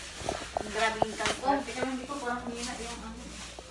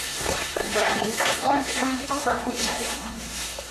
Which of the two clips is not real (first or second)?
second